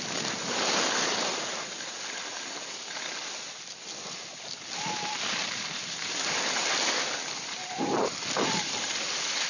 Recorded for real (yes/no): yes